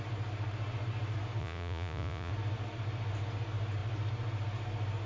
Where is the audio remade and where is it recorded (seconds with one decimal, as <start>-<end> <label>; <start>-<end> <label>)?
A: 0.0-1.4 recorded; 1.4-2.3 remade; 2.3-5.1 recorded